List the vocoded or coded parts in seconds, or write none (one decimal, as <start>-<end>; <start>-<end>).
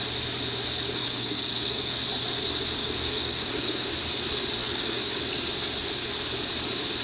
1.0-2.0; 2.8-3.9; 4.6-5.2